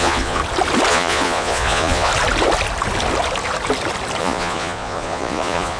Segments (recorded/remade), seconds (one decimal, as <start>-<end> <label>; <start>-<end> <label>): 0.0-0.4 remade; 0.4-0.9 recorded; 0.9-2.1 remade; 2.1-4.2 recorded; 4.2-5.8 remade